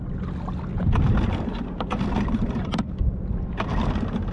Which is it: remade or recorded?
recorded